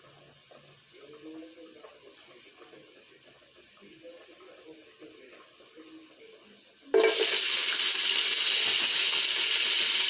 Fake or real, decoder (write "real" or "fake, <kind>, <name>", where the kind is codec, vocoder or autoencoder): real